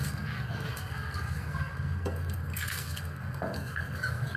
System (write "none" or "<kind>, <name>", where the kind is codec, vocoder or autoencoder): codec, SNAC